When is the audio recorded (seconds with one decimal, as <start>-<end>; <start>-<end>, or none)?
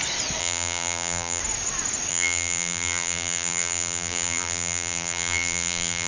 0.0-0.4; 1.4-2.1